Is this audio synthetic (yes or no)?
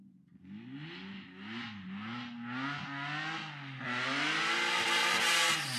no